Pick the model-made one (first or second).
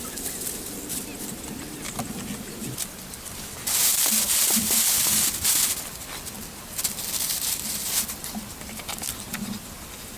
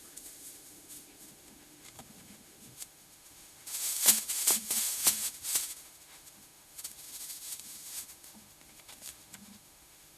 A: second